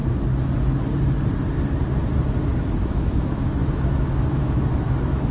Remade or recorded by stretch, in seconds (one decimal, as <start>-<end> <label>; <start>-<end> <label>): 0.0-2.6 recorded; 2.6-5.3 remade